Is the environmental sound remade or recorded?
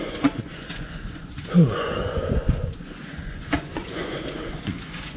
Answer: remade